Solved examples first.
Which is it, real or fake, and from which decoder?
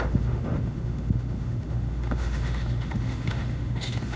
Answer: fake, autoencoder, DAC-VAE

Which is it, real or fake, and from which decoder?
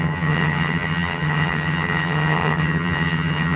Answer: fake, vocoder, HiFi-GAN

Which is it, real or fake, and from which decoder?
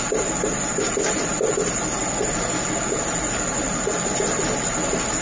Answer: real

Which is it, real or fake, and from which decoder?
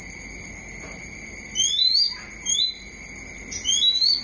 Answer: real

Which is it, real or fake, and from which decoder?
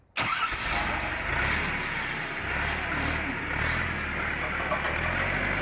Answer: real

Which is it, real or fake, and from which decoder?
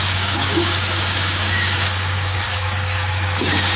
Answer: fake, codec, DAC